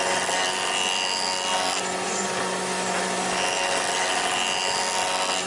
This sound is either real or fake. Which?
real